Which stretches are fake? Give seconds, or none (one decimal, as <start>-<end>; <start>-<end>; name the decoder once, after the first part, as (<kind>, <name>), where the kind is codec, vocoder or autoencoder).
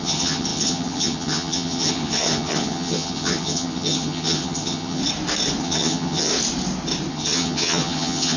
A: 0.0-5.0 (vocoder, HiFi-GAN); 5.6-6.3; 7.1-8.4